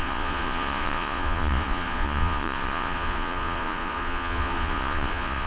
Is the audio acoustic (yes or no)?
no